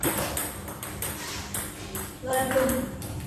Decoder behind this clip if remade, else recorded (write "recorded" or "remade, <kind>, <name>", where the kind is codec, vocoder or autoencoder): remade, vocoder, BigVGAN v2